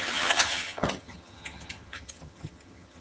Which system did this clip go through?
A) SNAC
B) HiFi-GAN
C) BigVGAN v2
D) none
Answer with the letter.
B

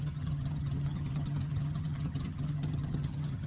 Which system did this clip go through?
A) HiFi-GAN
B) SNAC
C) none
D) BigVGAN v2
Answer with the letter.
A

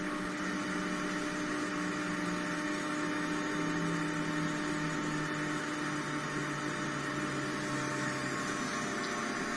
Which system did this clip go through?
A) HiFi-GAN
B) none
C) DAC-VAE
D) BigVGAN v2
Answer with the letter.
B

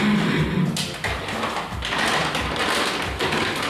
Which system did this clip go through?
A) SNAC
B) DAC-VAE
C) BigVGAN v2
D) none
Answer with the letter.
D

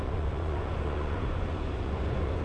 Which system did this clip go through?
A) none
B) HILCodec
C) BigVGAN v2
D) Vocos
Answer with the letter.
D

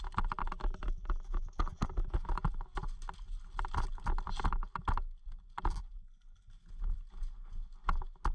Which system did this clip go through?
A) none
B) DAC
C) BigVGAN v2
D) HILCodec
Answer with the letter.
A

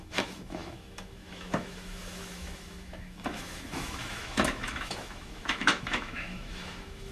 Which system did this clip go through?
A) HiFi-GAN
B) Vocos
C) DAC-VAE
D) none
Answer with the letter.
C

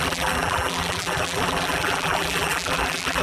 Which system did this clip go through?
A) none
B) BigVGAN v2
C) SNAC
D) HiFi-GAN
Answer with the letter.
B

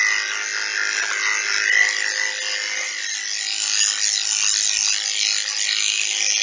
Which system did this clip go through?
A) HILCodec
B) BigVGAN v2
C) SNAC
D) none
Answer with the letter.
D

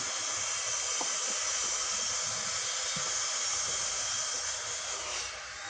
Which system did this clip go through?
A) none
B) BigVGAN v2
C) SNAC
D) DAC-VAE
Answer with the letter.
A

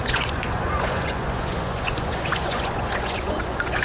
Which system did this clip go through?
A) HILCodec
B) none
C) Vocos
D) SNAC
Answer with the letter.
C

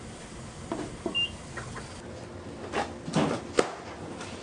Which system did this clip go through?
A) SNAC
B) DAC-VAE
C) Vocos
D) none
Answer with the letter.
D